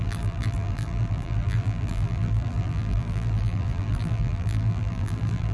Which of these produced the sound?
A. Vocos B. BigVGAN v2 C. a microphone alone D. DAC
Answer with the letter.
B